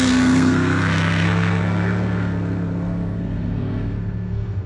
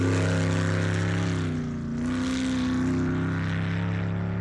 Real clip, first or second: second